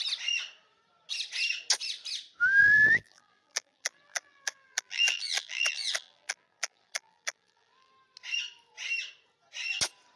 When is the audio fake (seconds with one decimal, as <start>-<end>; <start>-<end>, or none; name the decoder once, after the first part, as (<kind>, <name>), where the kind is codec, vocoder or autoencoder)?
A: 2.6-7.9 (vocoder, BigVGAN v2)